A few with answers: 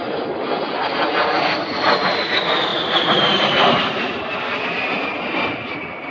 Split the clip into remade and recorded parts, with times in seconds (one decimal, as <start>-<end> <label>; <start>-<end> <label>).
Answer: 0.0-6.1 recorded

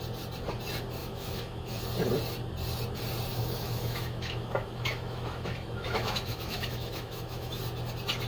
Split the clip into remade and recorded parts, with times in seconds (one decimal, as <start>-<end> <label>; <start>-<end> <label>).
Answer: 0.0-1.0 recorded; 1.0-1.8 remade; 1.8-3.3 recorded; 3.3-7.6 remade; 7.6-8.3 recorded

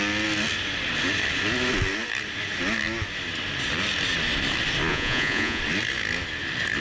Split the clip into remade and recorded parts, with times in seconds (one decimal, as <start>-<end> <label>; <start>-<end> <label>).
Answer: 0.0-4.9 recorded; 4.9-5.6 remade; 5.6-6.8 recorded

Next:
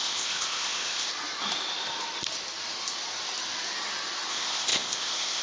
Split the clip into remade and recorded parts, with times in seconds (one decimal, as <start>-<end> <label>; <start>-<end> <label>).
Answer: 0.0-1.1 remade; 1.1-4.3 recorded; 4.3-5.4 remade

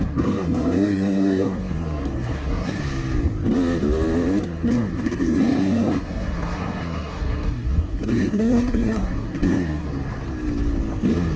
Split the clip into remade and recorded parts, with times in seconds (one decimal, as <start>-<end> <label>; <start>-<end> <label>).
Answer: 0.0-2.8 remade; 2.8-4.4 recorded; 4.4-9.9 remade; 9.9-11.4 recorded